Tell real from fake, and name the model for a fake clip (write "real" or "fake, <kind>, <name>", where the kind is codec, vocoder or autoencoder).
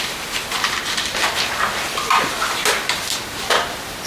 real